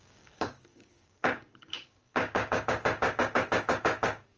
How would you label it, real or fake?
fake